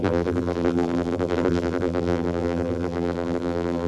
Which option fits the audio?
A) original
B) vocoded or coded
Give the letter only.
B